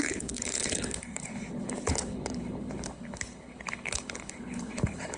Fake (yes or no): yes